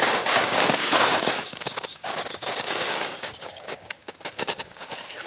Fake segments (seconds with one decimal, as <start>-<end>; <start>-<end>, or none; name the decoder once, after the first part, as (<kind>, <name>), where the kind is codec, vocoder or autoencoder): 0.0-5.3 (codec, DAC)